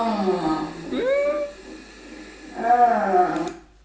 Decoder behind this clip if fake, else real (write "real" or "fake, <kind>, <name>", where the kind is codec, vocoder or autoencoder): real